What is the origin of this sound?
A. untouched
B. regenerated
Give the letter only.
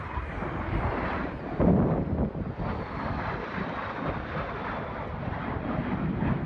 A